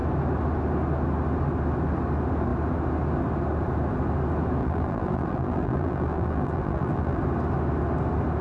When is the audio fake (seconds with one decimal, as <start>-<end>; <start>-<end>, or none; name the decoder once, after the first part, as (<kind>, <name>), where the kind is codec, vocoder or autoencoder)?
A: 4.6-7.2 (vocoder, BigVGAN v2)